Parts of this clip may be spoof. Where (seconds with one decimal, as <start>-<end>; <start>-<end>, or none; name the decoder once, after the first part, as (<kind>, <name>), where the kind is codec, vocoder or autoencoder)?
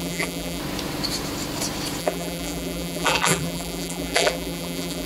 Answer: 0.0-0.6 (vocoder, BigVGAN v2); 2.0-5.1